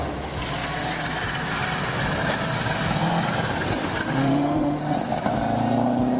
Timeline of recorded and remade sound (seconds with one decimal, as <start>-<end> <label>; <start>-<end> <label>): 0.0-3.8 recorded; 3.8-4.8 remade; 4.8-6.2 recorded